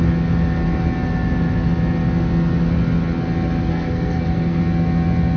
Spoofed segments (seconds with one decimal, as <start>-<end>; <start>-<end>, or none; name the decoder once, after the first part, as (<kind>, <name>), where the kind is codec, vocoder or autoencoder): 3.7-4.6 (codec, SNAC)